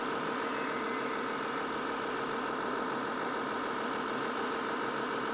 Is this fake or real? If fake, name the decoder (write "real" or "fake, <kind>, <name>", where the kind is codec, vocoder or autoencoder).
real